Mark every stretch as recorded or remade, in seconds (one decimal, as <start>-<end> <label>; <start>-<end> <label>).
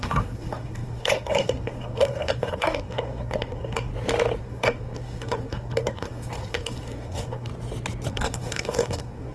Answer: 0.0-3.9 remade; 3.9-4.4 recorded; 4.4-7.5 remade; 7.5-8.1 recorded; 8.1-9.3 remade